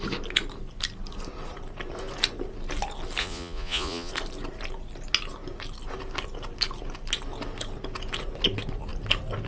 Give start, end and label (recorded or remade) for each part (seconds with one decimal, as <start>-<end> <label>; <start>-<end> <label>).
0.0-3.2 recorded; 3.2-4.1 remade; 4.1-9.5 recorded